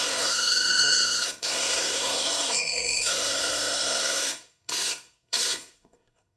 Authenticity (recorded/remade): remade